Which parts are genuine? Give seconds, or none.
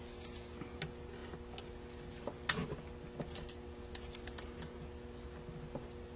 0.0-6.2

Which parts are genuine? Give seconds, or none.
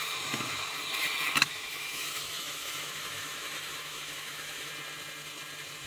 0.0-1.4; 4.7-5.9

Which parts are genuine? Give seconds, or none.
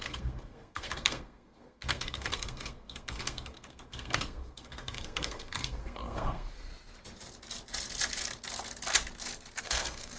6.7-9.6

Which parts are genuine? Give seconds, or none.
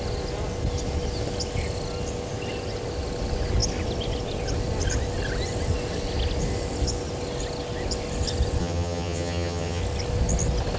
0.0-8.6; 9.8-10.8